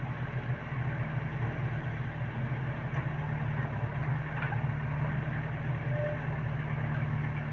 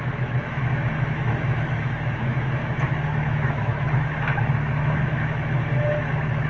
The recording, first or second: first